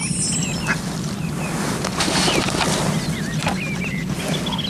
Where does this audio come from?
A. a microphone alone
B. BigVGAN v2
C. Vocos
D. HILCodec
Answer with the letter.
A